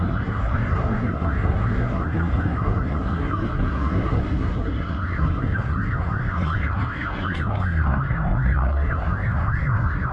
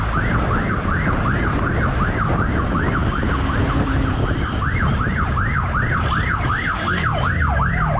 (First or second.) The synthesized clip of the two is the first